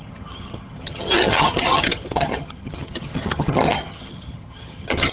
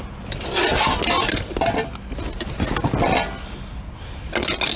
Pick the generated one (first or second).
first